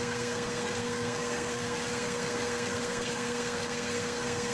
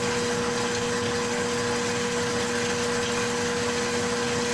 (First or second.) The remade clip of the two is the first